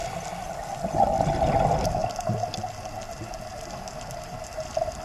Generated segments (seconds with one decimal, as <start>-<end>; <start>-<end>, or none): none